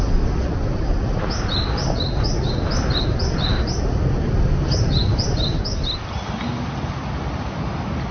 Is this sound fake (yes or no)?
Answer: no